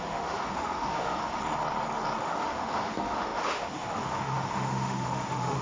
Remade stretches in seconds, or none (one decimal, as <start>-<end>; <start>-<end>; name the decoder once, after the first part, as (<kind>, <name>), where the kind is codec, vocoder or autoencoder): 0.0-1.4 (autoencoder, DAC-VAE); 2.2-5.6